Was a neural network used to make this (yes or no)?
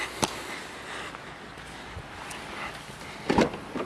no